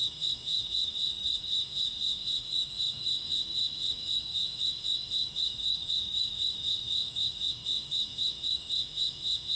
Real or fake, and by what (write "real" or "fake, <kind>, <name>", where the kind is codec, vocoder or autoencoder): fake, autoencoder, DAC-VAE